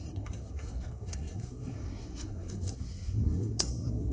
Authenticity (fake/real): fake